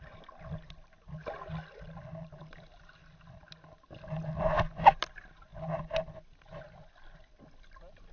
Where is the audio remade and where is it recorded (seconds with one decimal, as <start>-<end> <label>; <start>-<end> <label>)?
0.0-8.1 recorded